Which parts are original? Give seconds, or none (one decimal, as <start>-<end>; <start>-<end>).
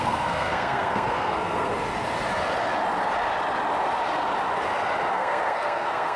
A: 1.7-5.1